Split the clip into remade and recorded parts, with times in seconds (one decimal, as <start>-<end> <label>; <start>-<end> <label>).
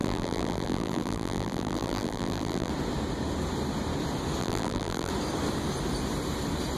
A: 0.0-2.7 remade; 2.7-4.4 recorded; 4.4-5.1 remade; 5.1-6.8 recorded